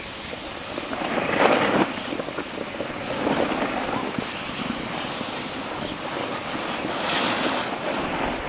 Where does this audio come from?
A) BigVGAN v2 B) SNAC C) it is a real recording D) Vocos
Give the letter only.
C